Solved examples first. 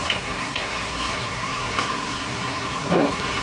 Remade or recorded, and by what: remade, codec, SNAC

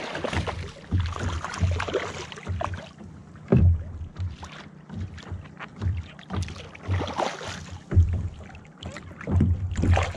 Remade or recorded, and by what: recorded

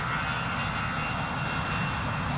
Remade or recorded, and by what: recorded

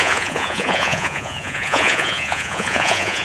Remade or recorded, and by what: remade, vocoder, Vocos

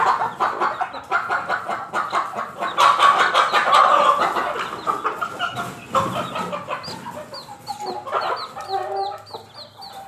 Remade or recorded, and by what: recorded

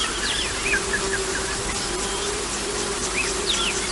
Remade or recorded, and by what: remade, vocoder, BigVGAN v2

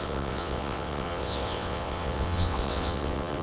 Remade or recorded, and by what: remade, vocoder, WaveNeXt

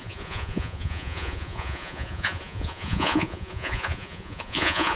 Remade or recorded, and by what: remade, vocoder, Vocos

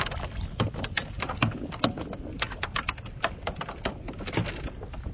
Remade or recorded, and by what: recorded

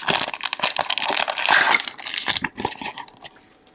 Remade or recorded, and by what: recorded